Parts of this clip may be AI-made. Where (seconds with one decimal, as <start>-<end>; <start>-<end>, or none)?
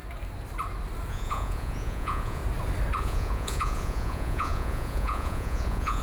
1.1-2.4; 3.0-6.0